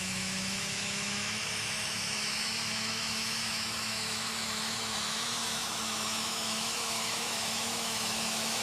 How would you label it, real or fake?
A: fake